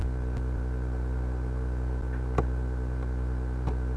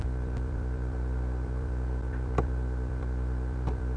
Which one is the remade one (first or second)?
second